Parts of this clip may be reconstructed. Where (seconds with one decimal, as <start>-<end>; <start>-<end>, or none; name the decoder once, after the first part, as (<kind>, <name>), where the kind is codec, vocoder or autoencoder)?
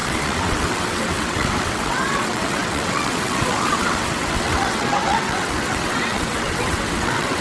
0.0-7.4 (vocoder, WaveNeXt)